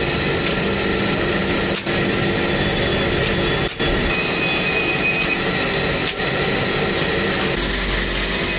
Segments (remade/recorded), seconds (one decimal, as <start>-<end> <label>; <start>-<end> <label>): 0.0-0.9 recorded; 0.9-1.7 remade; 1.7-6.0 recorded; 6.0-6.6 remade; 6.6-8.6 recorded